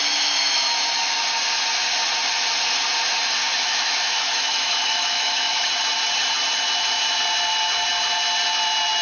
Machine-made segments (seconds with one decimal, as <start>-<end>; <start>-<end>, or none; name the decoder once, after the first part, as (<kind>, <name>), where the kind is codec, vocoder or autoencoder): 0.0-0.9 (autoencoder, DAC-VAE); 3.4-5.7